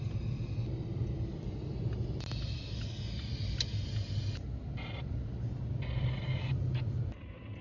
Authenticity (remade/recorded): recorded